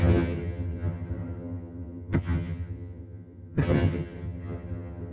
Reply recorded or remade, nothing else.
remade